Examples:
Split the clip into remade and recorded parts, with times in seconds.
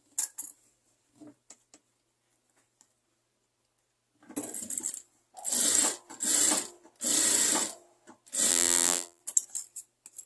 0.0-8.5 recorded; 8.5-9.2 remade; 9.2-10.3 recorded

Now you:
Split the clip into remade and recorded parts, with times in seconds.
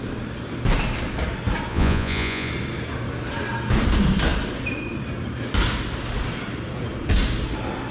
0.0-1.7 recorded; 1.7-2.5 remade; 2.5-7.9 recorded